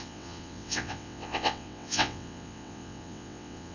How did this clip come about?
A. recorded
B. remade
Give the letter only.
B